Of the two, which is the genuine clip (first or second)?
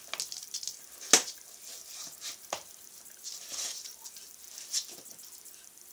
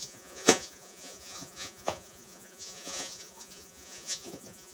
first